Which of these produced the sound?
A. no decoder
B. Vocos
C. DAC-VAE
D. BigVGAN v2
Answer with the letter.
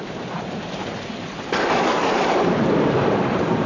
D